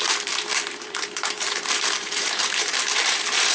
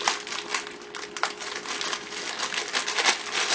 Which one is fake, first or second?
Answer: first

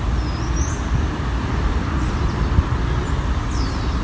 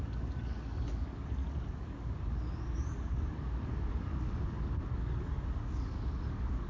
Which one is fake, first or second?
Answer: second